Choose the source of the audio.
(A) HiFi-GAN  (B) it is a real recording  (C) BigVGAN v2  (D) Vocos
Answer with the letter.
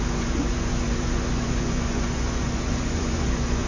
D